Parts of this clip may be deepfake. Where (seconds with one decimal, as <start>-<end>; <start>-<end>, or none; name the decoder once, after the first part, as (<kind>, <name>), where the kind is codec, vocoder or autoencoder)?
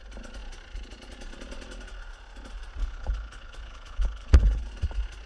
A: 2.8-4.6 (codec, HILCodec)